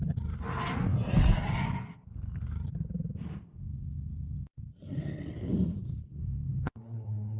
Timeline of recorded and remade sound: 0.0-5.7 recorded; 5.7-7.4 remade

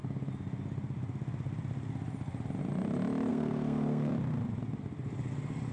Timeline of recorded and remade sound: 0.0-3.3 recorded; 3.3-4.1 remade; 4.1-5.7 recorded

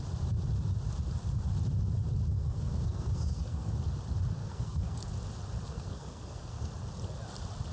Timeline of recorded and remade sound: 0.0-2.3 recorded; 2.3-3.7 remade; 3.7-4.4 recorded; 4.4-5.1 remade; 5.1-5.7 recorded; 5.7-6.7 remade; 6.7-7.7 recorded

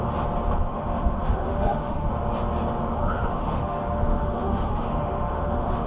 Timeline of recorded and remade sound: 0.0-0.7 recorded; 0.7-2.1 remade; 2.1-3.0 recorded; 3.0-5.9 remade

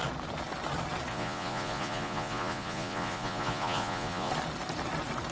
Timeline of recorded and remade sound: 0.0-1.1 recorded; 1.1-4.3 remade; 4.3-5.3 recorded